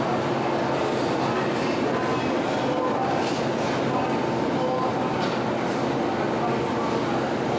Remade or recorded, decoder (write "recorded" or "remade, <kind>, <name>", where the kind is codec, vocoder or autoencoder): recorded